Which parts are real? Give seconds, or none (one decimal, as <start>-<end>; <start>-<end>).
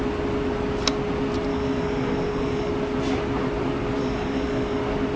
0.0-1.5; 2.7-4.0; 4.8-5.2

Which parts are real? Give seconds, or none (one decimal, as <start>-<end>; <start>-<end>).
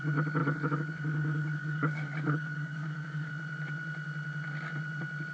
0.0-0.4; 3.3-5.3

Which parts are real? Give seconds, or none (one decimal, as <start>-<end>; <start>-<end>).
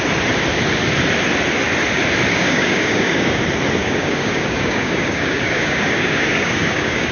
0.0-2.3; 3.4-3.8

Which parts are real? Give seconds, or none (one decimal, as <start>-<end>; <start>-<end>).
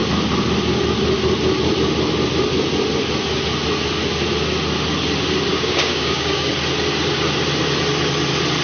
0.0-5.5; 6.5-8.6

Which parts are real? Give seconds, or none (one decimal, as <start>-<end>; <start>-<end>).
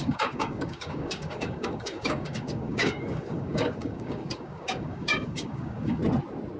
6.0-6.6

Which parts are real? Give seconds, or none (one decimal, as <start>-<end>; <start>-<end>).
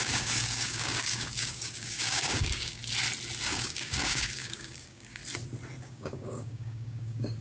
2.8-3.4; 5.2-5.8